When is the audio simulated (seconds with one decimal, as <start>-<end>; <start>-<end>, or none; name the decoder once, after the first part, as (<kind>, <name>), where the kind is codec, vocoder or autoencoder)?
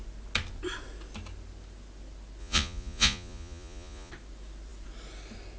2.4-4.1 (vocoder, Vocos)